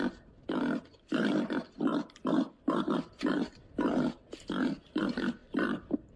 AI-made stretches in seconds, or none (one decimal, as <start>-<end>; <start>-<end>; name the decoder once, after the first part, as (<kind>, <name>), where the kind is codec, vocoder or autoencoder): 3.5-5.0 (vocoder, BigVGAN v2); 5.4-6.2